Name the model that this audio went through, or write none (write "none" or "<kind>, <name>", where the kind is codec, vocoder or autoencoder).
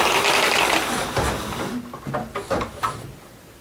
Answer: none